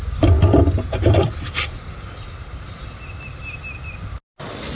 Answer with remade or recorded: recorded